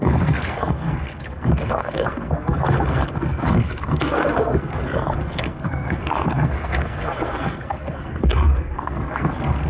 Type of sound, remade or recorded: remade